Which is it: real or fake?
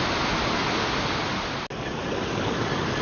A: real